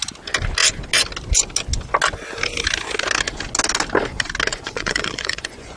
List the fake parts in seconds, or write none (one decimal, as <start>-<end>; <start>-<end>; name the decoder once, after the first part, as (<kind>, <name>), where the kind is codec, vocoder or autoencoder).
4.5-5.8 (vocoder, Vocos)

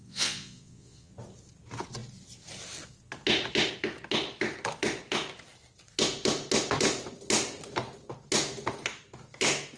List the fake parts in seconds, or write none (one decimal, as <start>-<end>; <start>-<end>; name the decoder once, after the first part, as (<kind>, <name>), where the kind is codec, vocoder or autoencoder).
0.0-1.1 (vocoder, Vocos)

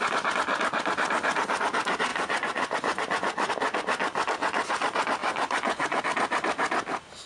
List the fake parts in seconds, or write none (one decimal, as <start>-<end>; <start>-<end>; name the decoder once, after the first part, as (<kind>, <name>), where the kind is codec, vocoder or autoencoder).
2.1-3.5 (vocoder, Vocos); 5.2-6.0

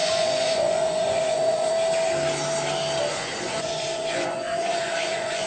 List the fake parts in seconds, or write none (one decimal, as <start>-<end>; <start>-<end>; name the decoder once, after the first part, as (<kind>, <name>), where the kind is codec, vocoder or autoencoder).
0.0-1.7 (vocoder, Vocos); 3.1-5.5

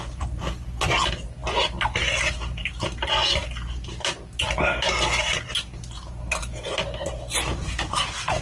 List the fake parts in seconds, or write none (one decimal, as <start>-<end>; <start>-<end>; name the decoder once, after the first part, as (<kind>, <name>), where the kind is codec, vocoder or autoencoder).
none

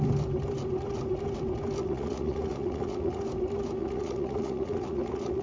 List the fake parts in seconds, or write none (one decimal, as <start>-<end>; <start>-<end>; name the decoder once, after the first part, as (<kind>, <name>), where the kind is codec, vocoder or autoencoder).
1.8-3.2 (vocoder, Vocos); 3.8-5.4

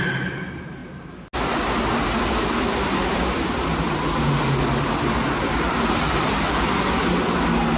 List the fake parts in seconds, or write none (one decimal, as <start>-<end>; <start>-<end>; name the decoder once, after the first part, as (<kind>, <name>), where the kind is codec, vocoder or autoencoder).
none

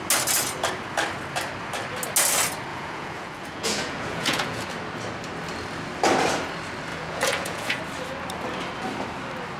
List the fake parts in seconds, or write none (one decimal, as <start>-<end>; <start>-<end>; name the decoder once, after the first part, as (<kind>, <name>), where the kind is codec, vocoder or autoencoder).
2.7-4.7 (vocoder, Vocos); 6.9-7.8